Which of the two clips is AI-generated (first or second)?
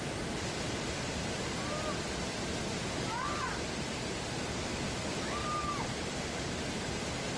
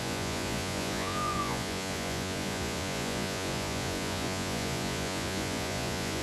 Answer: second